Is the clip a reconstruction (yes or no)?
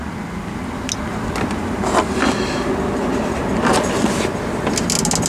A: no